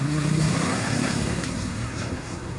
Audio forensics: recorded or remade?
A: remade